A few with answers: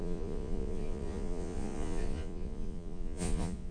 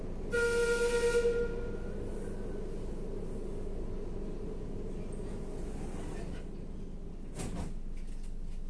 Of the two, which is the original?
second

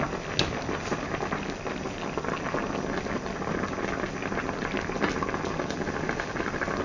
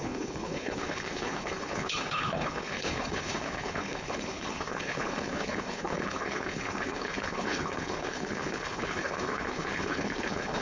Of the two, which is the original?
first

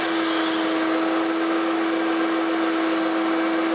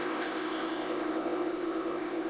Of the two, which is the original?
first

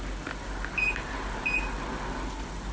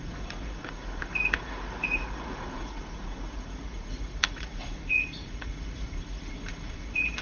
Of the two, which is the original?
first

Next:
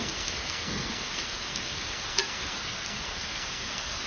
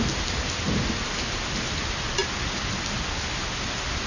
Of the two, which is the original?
second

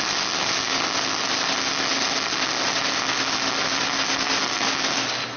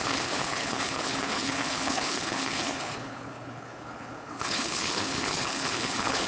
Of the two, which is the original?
first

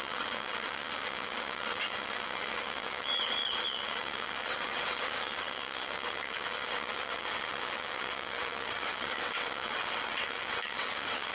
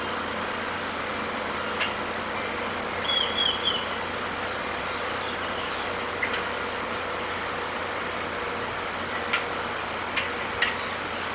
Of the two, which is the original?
second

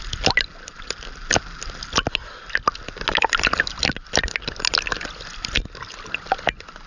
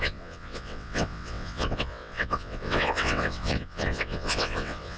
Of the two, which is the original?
first